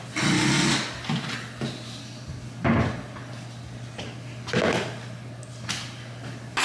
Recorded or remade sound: recorded